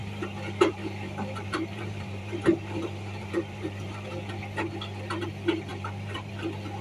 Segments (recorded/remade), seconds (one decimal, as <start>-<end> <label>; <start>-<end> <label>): 0.0-4.1 remade; 4.1-5.7 recorded; 5.7-6.3 remade; 6.3-6.8 recorded